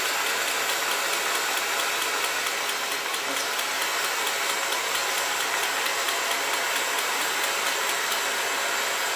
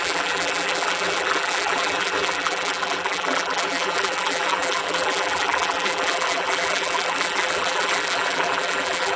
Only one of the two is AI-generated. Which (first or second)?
second